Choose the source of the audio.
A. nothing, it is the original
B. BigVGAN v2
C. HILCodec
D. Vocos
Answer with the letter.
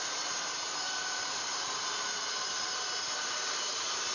B